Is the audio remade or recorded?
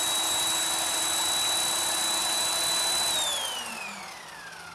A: recorded